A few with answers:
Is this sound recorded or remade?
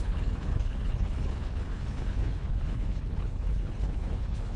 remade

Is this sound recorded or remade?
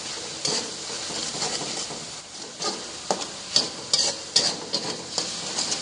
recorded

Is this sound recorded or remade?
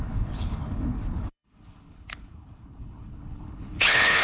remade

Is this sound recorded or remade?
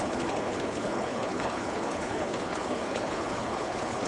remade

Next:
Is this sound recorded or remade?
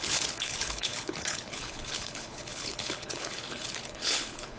remade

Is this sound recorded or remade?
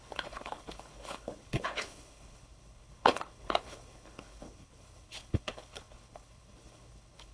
remade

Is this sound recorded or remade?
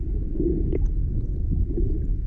recorded